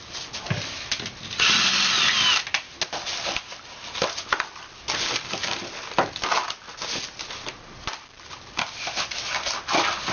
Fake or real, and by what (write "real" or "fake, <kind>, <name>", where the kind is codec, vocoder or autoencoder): real